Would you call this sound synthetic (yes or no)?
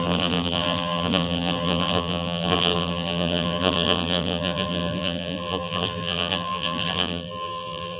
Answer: yes